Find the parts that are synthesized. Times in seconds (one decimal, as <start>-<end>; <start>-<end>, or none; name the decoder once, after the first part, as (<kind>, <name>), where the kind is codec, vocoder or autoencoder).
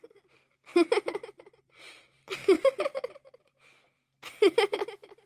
none